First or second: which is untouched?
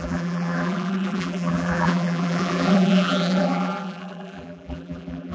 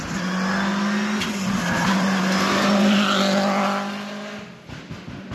second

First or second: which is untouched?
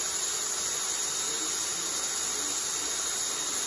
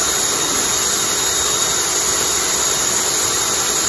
first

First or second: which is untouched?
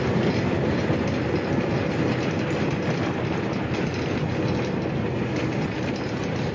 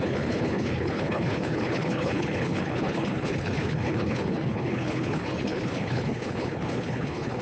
first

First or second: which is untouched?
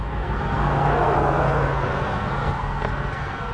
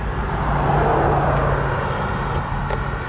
second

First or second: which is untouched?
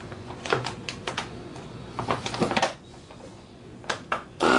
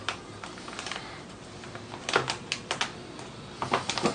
second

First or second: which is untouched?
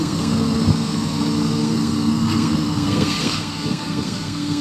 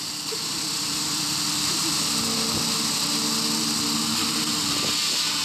second